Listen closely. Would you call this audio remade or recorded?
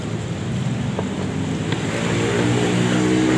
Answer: recorded